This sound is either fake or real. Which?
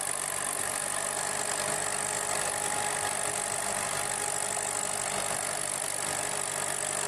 real